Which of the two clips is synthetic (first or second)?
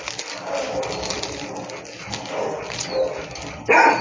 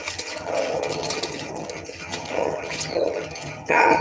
second